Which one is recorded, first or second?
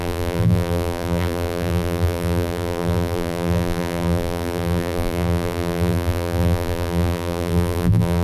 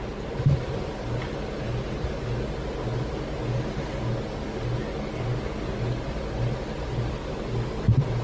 second